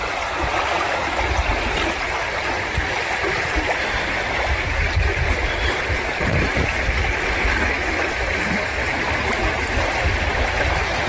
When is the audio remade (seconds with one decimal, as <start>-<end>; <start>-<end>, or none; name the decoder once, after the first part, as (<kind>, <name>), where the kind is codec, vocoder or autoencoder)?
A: 4.0-5.1 (vocoder, BigVGAN v2); 5.9-6.5; 9.1-11.1